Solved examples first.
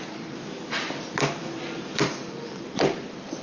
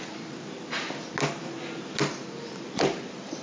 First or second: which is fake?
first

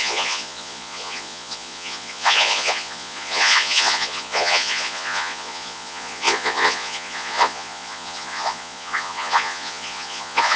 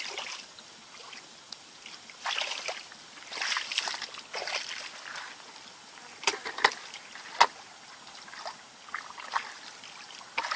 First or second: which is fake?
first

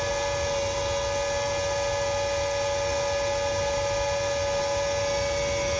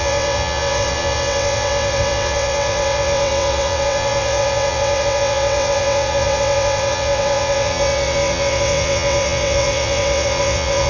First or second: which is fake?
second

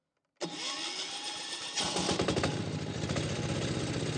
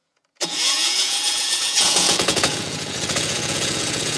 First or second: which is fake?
second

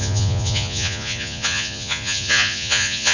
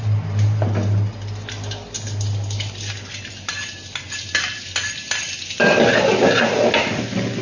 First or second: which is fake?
first